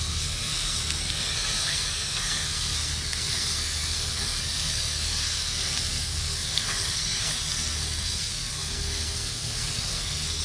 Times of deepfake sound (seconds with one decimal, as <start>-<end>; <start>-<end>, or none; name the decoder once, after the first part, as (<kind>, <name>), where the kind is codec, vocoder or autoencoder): 0.0-10.4 (codec, SNAC)